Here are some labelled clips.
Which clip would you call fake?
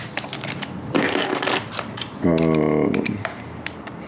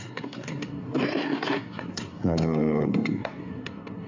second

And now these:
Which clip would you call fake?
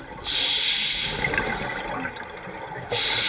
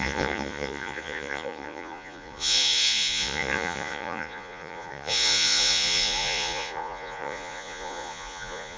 second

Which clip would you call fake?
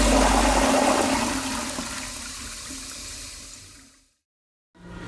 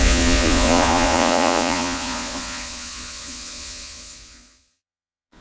second